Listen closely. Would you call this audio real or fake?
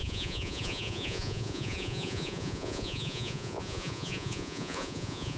fake